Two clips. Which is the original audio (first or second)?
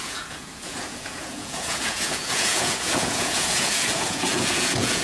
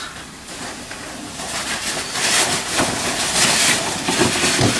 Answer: second